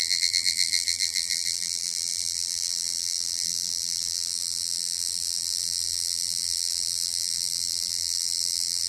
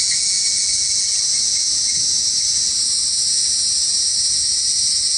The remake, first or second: first